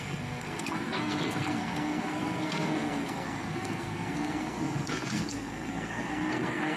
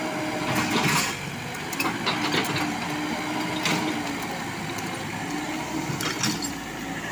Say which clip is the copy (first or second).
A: first